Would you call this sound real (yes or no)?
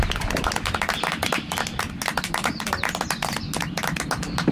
yes